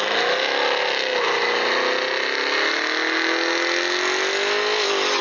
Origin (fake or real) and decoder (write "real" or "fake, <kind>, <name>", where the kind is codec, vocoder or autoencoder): real